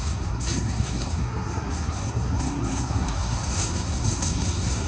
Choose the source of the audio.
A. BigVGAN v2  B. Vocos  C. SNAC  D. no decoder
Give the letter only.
C